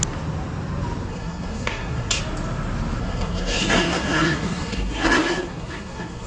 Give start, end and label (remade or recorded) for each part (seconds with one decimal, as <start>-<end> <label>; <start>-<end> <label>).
0.0-1.1 recorded; 1.1-2.2 remade; 2.2-3.0 recorded; 3.0-6.3 remade